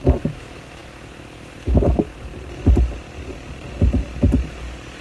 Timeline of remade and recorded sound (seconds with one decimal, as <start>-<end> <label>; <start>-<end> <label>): 0.0-2.3 remade; 2.3-5.0 recorded